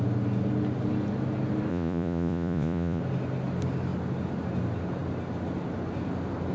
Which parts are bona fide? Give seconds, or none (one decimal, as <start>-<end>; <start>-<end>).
0.0-1.7; 3.0-6.5